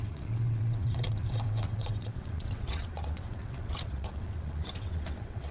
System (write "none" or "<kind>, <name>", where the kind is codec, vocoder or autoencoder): vocoder, WaveNeXt